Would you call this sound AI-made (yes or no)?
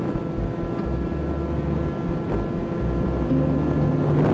no